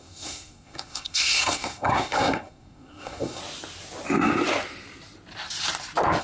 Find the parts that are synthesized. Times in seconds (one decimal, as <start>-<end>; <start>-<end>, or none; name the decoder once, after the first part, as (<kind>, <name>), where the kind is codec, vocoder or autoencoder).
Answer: 0.0-3.4 (codec, SNAC)